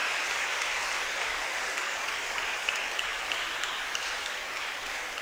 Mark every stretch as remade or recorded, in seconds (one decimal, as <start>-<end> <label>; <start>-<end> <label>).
0.0-5.2 remade